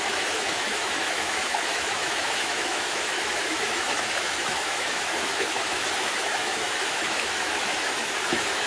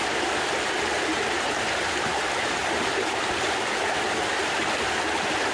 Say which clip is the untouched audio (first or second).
second